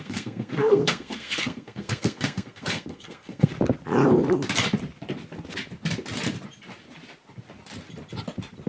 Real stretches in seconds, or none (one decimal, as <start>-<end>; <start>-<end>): 3.5-8.7